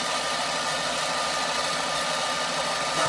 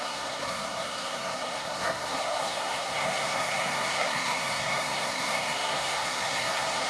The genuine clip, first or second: first